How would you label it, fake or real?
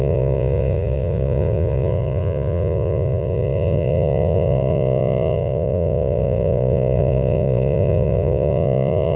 fake